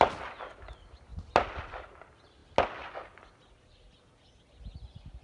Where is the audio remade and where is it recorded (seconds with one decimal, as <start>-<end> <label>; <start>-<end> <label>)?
0.0-5.2 recorded